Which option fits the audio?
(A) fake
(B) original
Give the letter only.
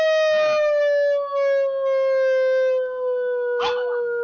B